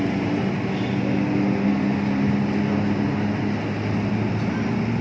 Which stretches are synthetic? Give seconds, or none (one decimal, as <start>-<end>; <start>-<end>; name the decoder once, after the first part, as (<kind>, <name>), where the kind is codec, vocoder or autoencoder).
none